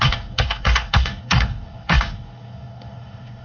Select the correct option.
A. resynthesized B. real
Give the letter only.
A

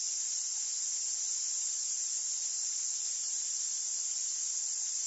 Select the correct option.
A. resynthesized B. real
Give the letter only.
A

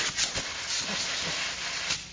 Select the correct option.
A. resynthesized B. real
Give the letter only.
B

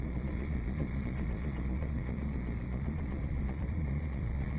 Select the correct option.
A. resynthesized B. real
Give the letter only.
A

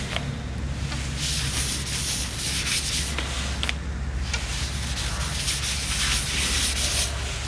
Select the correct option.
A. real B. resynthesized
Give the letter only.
A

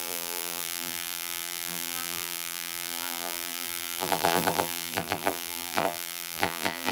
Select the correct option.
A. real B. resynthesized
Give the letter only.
B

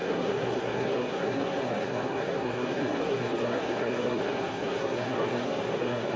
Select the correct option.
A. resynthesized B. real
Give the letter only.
A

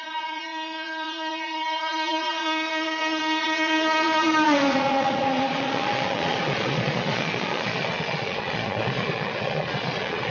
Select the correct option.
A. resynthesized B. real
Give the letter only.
A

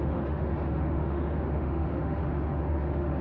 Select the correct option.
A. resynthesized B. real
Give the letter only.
A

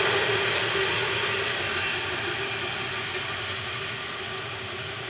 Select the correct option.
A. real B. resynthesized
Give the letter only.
A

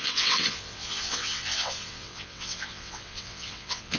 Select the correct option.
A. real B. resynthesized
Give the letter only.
B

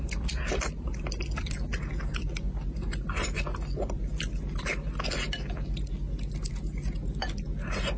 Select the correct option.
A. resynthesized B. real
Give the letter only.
B